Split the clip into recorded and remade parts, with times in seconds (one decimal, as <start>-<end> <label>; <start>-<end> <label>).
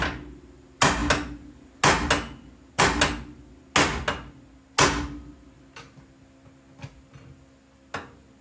0.0-8.4 recorded